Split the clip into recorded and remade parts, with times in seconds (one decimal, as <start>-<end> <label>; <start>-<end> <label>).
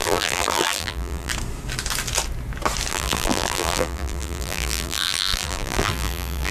0.0-1.3 remade; 1.3-2.9 recorded; 2.9-6.5 remade